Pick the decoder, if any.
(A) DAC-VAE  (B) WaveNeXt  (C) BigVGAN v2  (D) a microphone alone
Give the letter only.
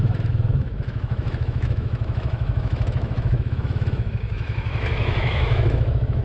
A